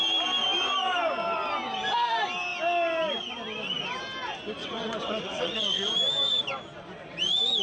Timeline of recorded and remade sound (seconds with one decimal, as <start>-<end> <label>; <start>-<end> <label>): 0.0-4.6 recorded; 4.6-5.9 remade; 5.9-7.6 recorded

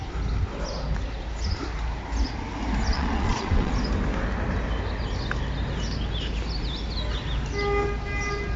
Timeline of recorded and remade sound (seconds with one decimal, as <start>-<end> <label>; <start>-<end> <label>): 0.0-2.9 recorded; 2.9-3.7 remade; 3.7-8.6 recorded

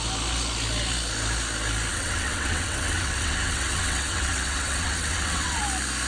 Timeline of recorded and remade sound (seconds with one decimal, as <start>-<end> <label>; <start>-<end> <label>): 0.0-1.9 recorded; 1.9-5.6 remade; 5.6-6.1 recorded

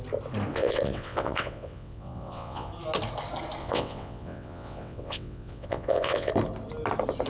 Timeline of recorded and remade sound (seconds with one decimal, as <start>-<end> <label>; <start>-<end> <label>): 0.0-0.5 recorded; 0.5-2.7 remade; 2.7-3.6 recorded; 3.6-6.3 remade; 6.3-7.3 recorded

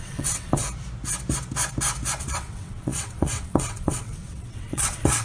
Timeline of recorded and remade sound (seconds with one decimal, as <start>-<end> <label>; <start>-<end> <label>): 0.0-0.6 remade; 0.6-2.2 recorded; 2.2-5.2 remade

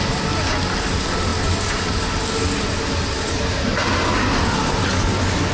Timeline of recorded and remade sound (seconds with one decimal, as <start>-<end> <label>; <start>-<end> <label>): 0.0-5.5 recorded

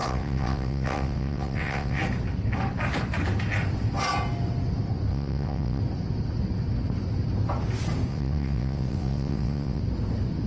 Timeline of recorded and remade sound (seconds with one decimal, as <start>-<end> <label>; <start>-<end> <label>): 0.0-2.0 remade; 2.0-5.1 recorded; 5.1-5.8 remade; 5.8-8.1 recorded; 8.1-9.8 remade; 9.8-10.5 recorded

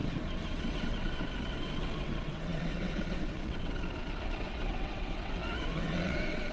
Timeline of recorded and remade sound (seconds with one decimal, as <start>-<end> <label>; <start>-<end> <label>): 0.0-0.6 recorded; 0.6-6.5 remade